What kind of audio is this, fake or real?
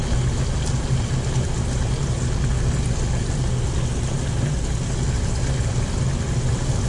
real